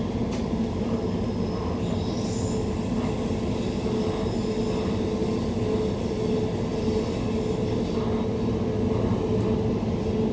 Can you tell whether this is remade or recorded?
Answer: recorded